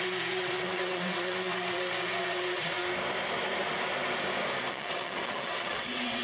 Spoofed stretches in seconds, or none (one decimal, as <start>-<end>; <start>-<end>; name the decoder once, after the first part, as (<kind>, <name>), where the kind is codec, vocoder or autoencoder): 0.0-2.8 (vocoder, WaveNeXt); 4.7-6.2